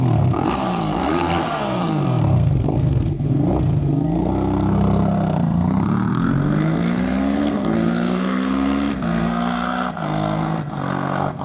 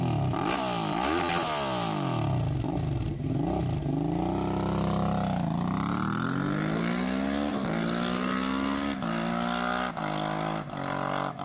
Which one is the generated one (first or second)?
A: first